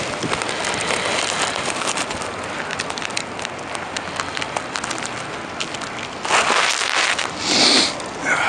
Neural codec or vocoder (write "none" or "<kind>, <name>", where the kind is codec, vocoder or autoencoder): none